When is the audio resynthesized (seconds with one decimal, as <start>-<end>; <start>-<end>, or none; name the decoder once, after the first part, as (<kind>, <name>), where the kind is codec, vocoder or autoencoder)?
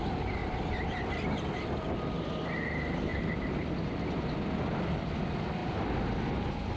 0.4-1.4 (vocoder, BigVGAN v2); 3.1-4.9; 5.6-6.2